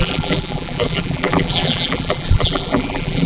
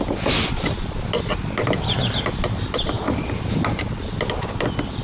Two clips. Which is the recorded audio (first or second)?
second